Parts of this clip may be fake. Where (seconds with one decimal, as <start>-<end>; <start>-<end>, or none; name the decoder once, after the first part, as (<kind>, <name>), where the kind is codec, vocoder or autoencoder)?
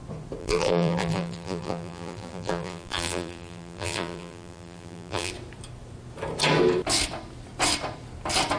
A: 0.4-5.3 (vocoder, BigVGAN v2)